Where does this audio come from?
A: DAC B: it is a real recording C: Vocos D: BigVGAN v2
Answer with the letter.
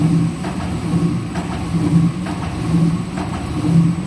B